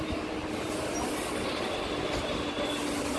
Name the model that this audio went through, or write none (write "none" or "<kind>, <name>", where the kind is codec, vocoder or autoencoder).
none